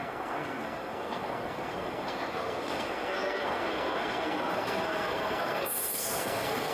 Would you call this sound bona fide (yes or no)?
no